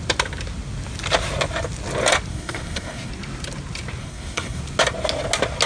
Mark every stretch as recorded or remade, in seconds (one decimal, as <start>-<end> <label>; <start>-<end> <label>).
0.0-2.3 recorded; 2.3-3.1 remade; 3.1-4.0 recorded; 4.0-4.6 remade; 4.6-5.7 recorded